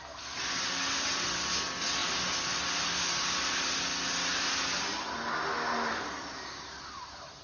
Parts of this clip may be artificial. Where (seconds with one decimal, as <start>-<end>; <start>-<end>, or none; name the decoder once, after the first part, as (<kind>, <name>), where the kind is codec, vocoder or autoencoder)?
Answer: none

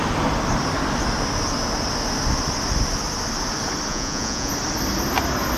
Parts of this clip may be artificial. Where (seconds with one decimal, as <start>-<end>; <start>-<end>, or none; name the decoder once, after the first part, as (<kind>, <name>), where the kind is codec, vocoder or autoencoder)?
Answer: 3.9-4.5 (vocoder, Vocos)